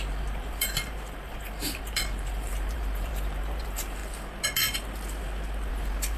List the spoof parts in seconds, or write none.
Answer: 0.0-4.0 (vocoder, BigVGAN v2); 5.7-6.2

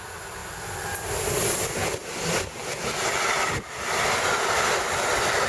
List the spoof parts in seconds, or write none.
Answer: none

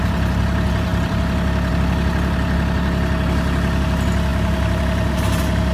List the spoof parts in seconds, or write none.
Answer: none